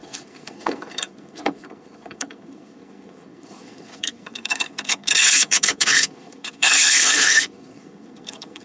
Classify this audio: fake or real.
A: fake